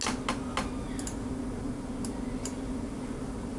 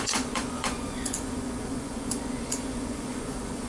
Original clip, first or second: first